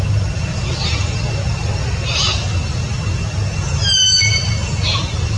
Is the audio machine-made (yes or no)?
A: no